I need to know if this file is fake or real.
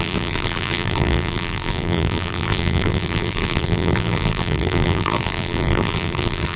fake